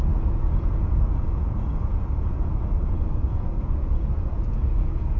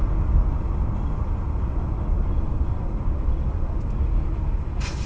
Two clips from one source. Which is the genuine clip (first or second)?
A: second